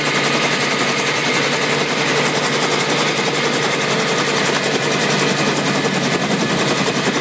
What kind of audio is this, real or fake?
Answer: real